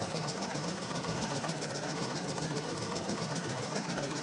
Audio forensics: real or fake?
fake